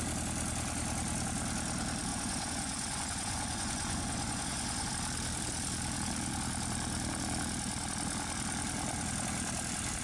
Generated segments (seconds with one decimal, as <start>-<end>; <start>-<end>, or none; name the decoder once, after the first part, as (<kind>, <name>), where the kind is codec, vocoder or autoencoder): 2.1-4.9 (vocoder, Vocos)